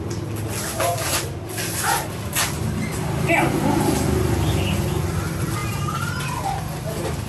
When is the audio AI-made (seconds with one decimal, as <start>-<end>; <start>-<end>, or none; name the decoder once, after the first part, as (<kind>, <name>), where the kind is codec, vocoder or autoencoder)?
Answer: 5.6-6.6 (vocoder, BigVGAN v2)